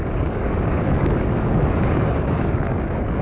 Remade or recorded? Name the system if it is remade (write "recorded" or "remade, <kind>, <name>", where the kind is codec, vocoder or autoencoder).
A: remade, codec, DAC